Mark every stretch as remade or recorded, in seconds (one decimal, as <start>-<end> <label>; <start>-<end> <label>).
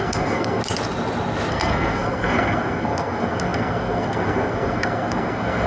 0.0-0.6 remade; 0.6-1.5 recorded; 1.5-5.7 remade